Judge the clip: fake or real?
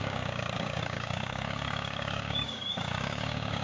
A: fake